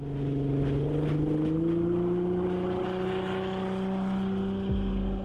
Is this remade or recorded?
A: recorded